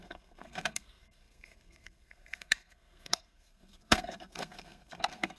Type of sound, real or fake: fake